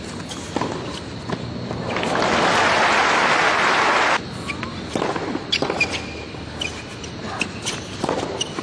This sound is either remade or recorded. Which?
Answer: recorded